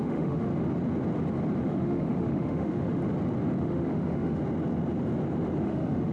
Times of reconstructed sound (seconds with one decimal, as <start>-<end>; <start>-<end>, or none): 0.0-0.5; 1.6-3.0; 3.6-4.4; 5.6-6.1